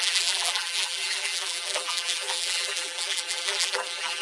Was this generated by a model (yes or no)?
yes